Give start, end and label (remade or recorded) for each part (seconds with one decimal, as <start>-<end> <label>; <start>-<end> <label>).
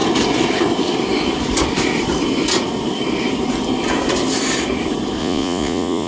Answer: 0.0-5.2 recorded; 5.2-6.1 remade